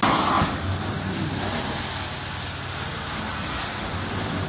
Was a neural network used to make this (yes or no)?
no